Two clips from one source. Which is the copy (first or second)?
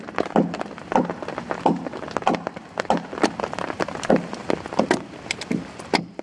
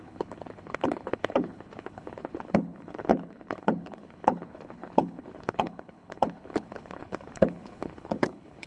second